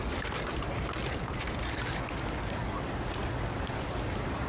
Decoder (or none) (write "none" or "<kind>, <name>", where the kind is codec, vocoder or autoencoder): none